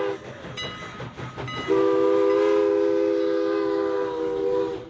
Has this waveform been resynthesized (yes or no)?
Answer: no